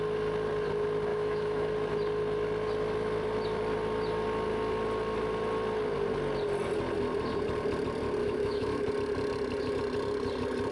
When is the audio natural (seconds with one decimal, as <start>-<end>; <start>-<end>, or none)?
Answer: 0.0-1.1; 1.7-8.2; 8.9-10.7